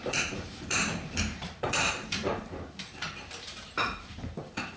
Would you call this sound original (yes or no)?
no